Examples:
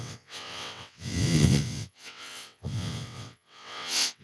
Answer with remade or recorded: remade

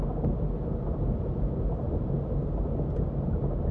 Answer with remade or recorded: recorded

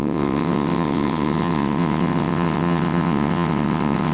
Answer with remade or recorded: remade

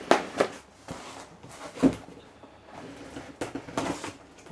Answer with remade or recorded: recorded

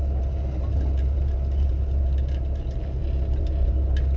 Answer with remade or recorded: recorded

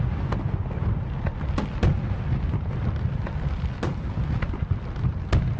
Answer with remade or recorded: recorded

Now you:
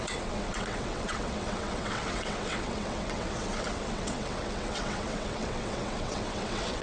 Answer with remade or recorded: remade